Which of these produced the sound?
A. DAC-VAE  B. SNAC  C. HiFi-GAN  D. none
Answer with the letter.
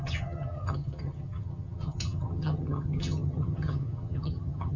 C